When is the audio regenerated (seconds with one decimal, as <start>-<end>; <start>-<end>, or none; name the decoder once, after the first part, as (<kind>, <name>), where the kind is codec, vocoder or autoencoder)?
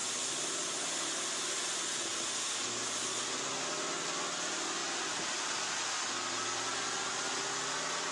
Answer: none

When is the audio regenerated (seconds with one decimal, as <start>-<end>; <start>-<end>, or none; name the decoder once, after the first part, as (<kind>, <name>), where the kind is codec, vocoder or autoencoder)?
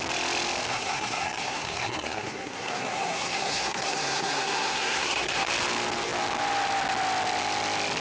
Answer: 0.7-5.5 (codec, SNAC)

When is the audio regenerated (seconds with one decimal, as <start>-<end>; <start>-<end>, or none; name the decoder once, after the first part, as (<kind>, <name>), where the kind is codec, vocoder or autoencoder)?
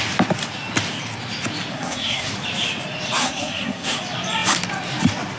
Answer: 1.7-2.3 (codec, SNAC); 3.2-4.0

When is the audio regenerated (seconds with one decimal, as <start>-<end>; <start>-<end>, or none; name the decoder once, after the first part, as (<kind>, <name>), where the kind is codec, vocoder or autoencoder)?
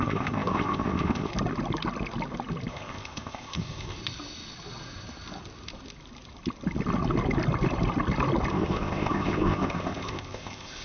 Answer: 0.0-1.3 (codec, ZipCodec); 2.7-4.0; 8.5-10.8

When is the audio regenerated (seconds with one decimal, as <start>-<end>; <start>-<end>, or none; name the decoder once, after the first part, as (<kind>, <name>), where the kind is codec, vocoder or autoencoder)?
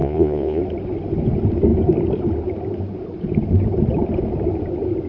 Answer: 0.0-0.6 (vocoder, Vocos)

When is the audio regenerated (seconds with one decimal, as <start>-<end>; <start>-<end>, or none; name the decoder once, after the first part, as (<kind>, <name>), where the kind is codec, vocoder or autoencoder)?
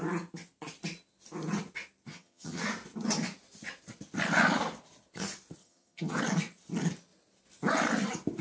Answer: 2.1-2.6 (vocoder, HiFi-GAN); 5.6-6.2